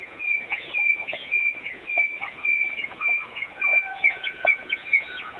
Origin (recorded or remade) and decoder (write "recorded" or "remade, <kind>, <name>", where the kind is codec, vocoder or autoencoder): remade, vocoder, Vocos